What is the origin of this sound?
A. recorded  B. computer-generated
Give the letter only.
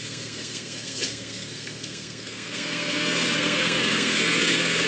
B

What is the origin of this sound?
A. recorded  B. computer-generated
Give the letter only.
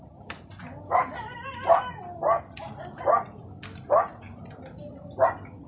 A